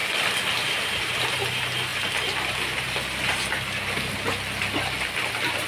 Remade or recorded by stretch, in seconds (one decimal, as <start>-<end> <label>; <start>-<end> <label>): 0.0-5.7 recorded